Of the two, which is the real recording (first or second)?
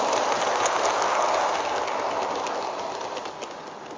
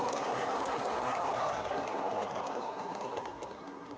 first